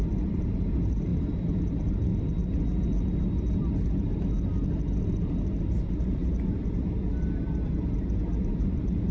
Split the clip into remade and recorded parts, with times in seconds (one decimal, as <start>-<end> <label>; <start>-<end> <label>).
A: 0.0-1.1 remade; 1.1-1.6 recorded; 1.6-2.1 remade; 2.1-4.9 recorded; 4.9-6.2 remade; 6.2-8.5 recorded; 8.5-9.1 remade